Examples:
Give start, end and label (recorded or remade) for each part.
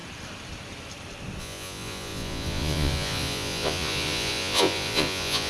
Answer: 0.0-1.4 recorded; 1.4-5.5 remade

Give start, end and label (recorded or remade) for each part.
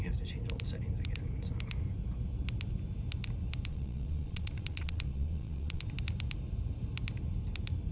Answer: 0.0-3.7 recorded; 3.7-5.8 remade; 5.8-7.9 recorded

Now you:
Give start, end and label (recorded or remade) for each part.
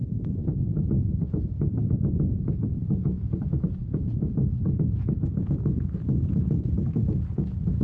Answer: 0.0-0.4 remade; 0.4-1.4 recorded; 1.4-7.8 remade